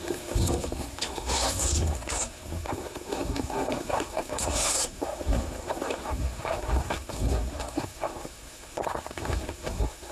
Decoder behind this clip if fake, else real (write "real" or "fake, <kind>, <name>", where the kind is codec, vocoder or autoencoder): fake, codec, SNAC